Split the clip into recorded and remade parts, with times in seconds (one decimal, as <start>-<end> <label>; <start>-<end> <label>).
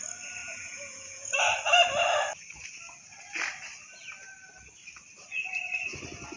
0.0-0.4 recorded; 0.4-1.3 remade; 1.3-6.4 recorded